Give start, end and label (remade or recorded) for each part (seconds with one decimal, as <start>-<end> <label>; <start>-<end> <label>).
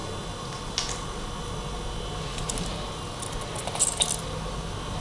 0.0-5.0 recorded